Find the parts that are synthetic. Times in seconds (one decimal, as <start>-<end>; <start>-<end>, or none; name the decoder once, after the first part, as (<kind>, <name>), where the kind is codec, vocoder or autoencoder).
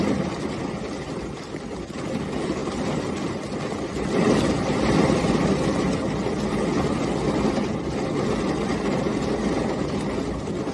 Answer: 2.6-3.3 (vocoder, BigVGAN v2)